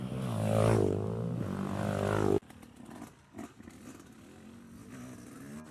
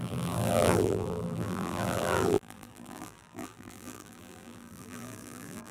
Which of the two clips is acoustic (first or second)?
first